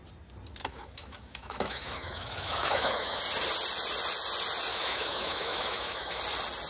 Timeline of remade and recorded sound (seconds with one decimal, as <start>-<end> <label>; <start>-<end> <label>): 0.0-0.6 recorded; 0.6-3.2 remade; 3.2-4.7 recorded; 4.7-6.2 remade; 6.2-6.7 recorded

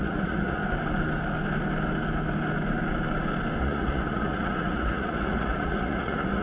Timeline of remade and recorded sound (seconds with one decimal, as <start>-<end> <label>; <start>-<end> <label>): 0.0-0.6 remade; 0.6-3.6 recorded; 3.6-6.4 remade